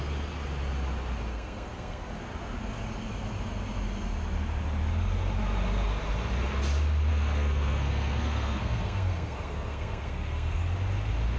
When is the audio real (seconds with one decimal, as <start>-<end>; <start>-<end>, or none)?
0.0-1.3; 2.1-7.1; 10.6-11.4